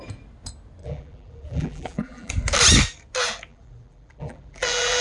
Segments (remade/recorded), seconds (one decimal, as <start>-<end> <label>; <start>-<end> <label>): 0.0-0.8 recorded; 0.8-2.3 remade; 2.3-3.5 recorded; 3.5-5.0 remade